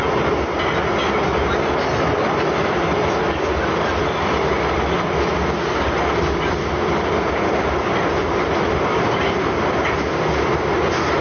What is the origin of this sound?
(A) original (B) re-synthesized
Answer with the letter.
A